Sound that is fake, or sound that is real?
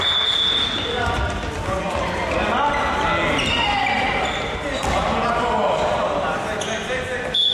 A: real